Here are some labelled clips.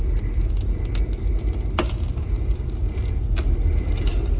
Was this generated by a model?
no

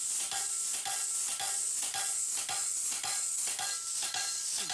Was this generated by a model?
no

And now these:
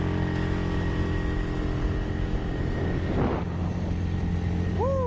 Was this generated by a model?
no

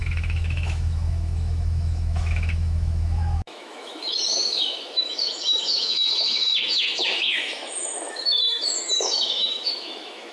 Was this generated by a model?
yes